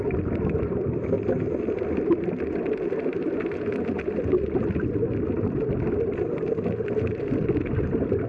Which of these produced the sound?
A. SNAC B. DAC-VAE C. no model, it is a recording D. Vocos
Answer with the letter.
C